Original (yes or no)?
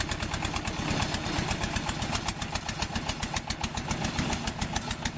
yes